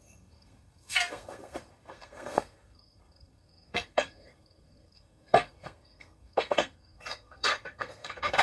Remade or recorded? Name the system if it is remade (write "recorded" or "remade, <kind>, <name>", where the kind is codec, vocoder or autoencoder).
remade, codec, SNAC